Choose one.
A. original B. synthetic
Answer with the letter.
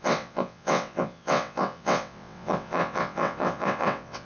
B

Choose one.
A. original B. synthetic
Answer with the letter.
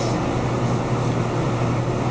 A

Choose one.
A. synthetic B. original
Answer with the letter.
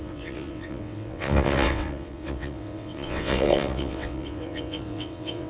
A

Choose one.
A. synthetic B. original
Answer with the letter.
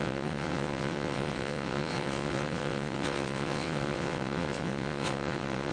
A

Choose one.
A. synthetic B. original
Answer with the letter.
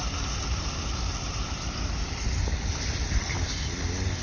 B